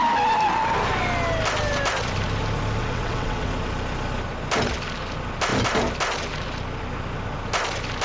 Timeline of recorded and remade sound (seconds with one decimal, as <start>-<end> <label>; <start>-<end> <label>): 0.0-2.8 recorded; 2.8-3.5 remade; 3.5-8.0 recorded